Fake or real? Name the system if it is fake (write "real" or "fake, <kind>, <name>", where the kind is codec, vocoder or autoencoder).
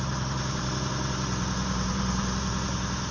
fake, vocoder, BigVGAN v2